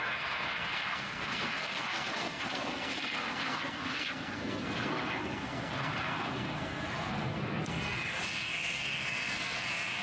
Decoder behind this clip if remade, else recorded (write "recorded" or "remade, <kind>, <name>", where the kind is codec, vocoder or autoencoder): remade, codec, SNAC